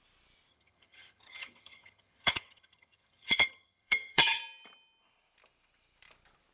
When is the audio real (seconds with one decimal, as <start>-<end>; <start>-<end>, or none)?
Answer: 0.0-0.5; 4.4-6.5